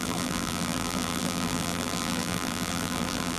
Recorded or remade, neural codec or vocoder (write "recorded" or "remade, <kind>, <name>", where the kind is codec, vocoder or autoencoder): remade, vocoder, BigVGAN v2